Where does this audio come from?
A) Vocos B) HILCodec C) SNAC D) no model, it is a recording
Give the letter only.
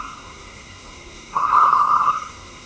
C